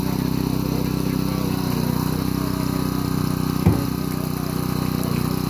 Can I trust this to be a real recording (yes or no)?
yes